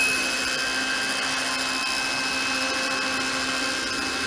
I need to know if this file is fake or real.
real